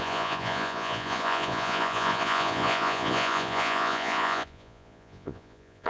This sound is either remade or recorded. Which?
remade